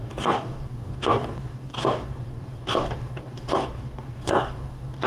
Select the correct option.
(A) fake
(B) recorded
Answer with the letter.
A